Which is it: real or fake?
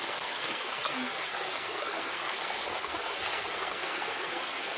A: fake